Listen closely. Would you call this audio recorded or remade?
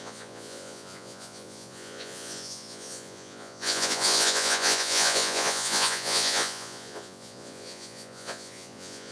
remade